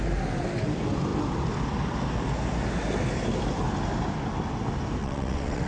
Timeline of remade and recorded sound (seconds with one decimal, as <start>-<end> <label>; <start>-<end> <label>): 0.0-5.0 recorded; 5.0-5.7 remade